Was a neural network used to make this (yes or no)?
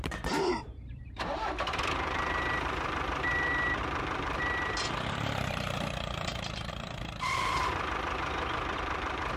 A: yes